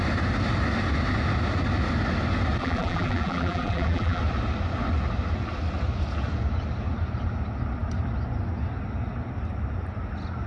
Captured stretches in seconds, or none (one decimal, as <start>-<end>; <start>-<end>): 0.0-2.6; 4.2-10.5